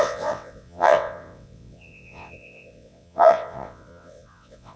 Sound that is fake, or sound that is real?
fake